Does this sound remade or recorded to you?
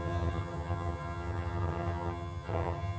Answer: remade